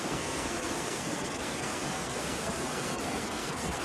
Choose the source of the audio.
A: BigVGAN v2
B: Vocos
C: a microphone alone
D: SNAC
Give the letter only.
D